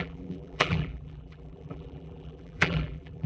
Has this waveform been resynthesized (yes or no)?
yes